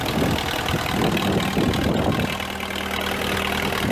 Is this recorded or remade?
recorded